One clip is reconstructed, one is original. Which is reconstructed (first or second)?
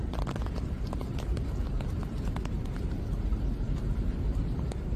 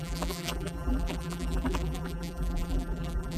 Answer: second